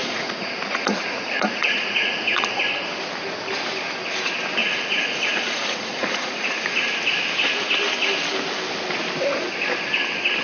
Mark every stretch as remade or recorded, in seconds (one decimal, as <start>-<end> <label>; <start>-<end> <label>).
0.0-2.6 remade; 2.6-4.6 recorded; 4.6-6.9 remade; 6.9-10.4 recorded